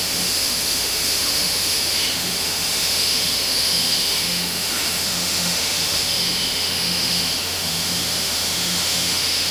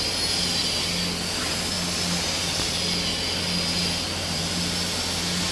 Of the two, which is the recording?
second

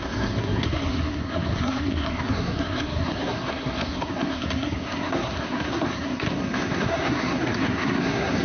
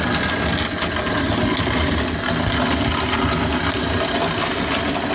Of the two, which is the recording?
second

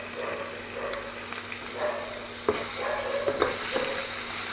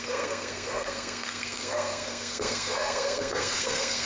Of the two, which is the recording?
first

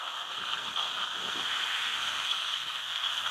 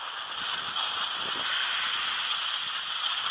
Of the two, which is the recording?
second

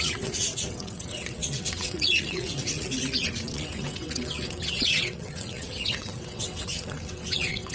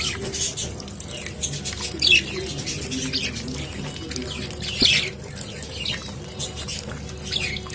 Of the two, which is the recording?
second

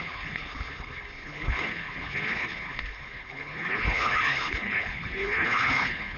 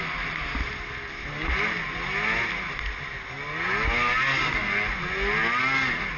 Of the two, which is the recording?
second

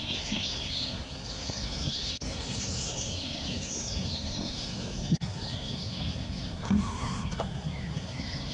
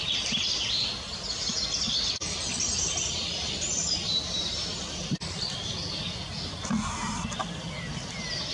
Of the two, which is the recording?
second